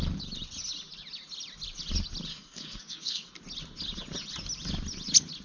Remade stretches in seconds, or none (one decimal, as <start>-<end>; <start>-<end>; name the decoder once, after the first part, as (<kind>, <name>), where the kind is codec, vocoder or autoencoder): 2.3-3.3 (codec, SNAC)